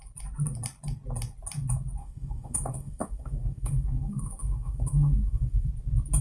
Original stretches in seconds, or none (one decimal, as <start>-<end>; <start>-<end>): 0.0-2.0; 5.7-6.2

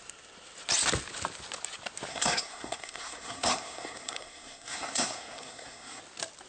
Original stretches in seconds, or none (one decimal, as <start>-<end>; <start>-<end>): 0.0-2.1; 6.0-6.5

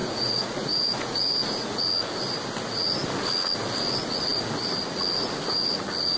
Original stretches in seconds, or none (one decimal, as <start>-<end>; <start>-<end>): 1.8-6.2